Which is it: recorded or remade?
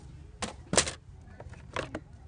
recorded